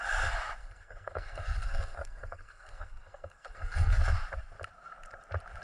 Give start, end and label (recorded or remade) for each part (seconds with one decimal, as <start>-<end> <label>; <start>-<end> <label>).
0.0-0.6 recorded; 0.6-4.0 remade; 4.0-5.6 recorded